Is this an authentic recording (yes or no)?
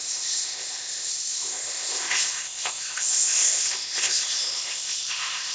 no